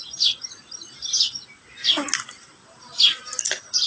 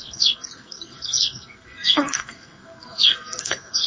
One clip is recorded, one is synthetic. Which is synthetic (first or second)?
second